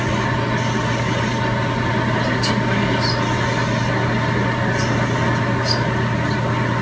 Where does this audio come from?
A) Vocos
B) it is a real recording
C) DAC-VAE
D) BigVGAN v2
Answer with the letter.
B